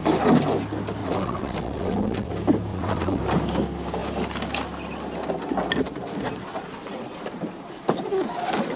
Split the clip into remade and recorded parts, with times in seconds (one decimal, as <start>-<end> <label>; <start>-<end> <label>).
0.0-1.0 recorded; 1.0-2.3 remade; 2.3-2.7 recorded; 2.7-3.2 remade; 3.2-8.8 recorded